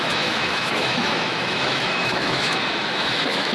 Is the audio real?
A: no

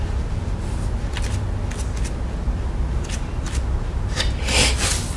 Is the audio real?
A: yes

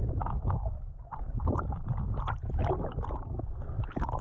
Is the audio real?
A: yes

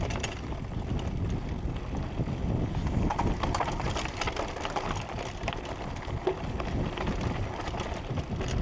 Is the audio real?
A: yes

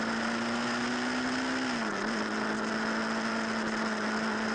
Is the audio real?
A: yes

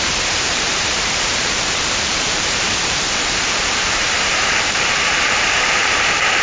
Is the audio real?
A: no